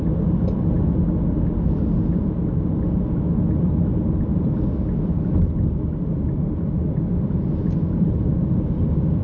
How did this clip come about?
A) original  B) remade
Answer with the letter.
A